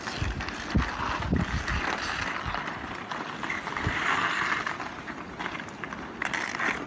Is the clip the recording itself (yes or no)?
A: yes